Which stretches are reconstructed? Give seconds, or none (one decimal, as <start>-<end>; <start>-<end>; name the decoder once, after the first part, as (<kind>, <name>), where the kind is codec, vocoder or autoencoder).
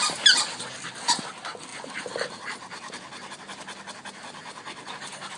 none